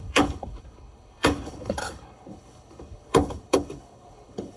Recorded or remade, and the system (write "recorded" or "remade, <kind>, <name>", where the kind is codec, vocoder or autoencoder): remade, codec, HILCodec